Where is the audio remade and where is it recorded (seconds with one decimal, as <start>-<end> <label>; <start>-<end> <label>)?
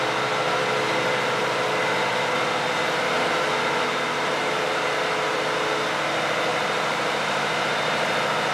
0.0-6.5 recorded; 6.5-7.7 remade; 7.7-8.5 recorded